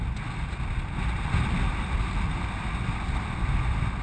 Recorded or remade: recorded